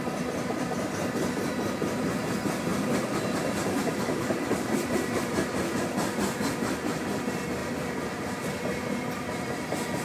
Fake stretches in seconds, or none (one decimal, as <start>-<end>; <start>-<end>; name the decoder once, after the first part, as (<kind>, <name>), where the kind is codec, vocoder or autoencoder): none

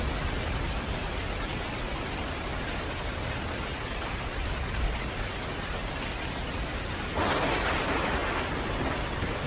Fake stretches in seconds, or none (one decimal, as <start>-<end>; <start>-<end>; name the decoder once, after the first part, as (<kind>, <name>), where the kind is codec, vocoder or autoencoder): none

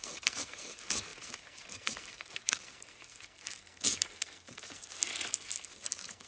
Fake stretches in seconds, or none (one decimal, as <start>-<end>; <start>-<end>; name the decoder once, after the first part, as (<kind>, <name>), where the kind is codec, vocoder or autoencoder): 0.0-6.3 (codec, SNAC)

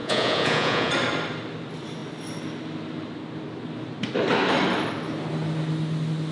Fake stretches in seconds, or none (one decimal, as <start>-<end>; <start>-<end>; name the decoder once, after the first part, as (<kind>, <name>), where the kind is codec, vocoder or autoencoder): 0.0-0.9 (vocoder, Vocos)

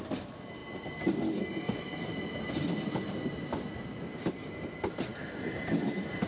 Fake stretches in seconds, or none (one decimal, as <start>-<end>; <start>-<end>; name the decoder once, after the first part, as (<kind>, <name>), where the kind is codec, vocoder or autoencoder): none

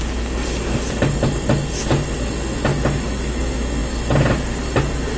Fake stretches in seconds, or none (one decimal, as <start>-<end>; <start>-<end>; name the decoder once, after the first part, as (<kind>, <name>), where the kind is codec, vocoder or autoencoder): 2.7-3.4 (vocoder, BigVGAN v2)